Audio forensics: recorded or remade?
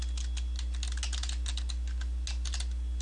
recorded